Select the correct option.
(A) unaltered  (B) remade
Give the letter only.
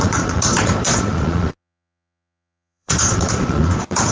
B